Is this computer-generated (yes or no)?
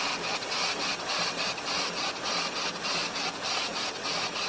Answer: no